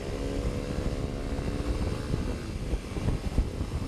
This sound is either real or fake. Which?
real